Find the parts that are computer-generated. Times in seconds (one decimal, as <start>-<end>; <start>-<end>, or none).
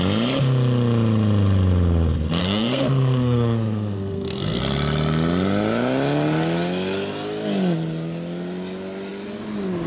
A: 2.4-4.6